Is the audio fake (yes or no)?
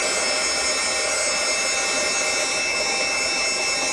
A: no